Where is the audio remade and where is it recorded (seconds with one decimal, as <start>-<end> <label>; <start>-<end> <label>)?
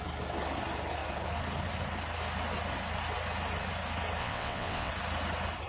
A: 0.0-4.2 recorded; 4.2-4.9 remade; 4.9-5.7 recorded